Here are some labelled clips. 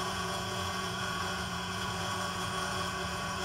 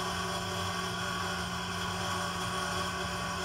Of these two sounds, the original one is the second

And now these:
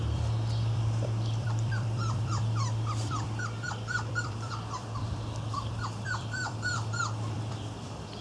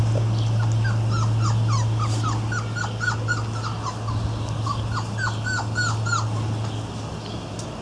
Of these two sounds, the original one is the second